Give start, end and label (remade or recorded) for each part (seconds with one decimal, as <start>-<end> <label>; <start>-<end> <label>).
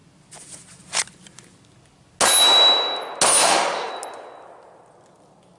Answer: 0.0-3.3 recorded; 3.3-3.9 remade; 3.9-5.6 recorded